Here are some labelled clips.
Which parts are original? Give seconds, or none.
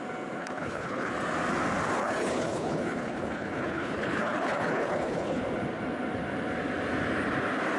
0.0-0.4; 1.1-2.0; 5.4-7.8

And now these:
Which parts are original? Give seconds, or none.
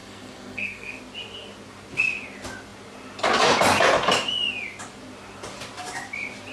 1.0-6.5